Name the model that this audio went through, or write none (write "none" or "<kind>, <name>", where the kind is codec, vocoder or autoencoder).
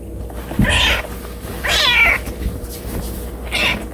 none